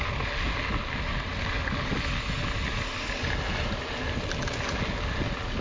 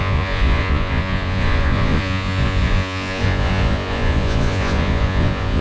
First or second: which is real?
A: first